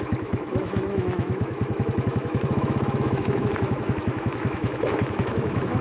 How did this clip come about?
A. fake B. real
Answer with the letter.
A